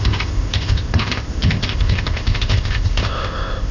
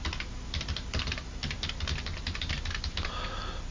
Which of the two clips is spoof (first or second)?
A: first